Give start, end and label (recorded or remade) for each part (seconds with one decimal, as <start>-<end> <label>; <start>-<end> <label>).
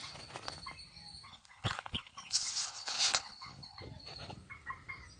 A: 0.0-1.3 recorded; 1.3-3.8 remade; 3.8-5.2 recorded